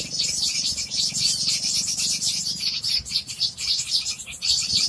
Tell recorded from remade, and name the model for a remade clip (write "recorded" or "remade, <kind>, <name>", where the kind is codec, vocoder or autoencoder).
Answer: recorded